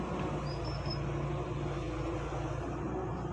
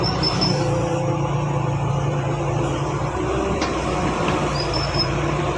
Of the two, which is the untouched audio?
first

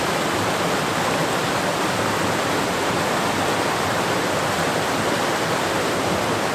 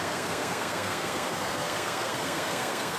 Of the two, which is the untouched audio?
first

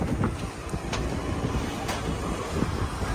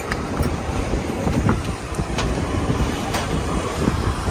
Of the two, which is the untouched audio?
first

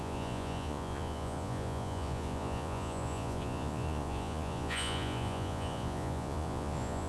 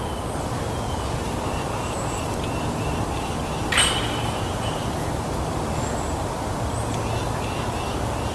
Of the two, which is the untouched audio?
second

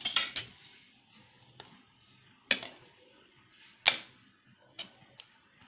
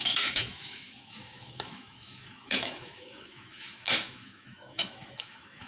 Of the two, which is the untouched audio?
first